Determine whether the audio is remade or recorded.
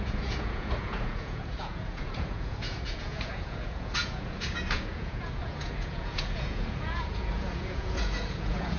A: remade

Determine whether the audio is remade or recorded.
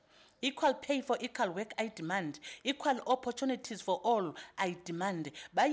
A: recorded